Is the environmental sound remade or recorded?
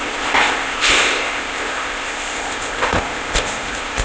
remade